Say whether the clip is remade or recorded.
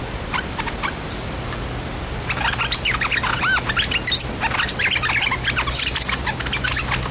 remade